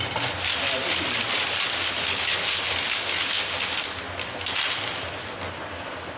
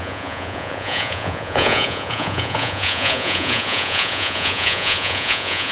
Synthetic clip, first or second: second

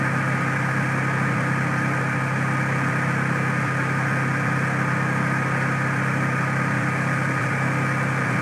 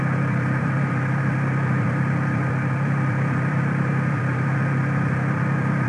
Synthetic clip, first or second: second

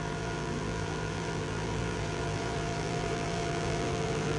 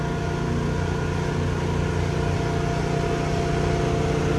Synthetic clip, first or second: first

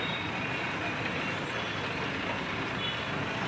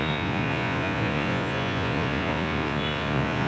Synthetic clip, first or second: second